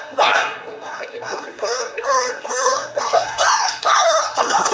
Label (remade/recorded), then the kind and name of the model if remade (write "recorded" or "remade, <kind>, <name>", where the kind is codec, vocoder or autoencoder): remade, codec, SNAC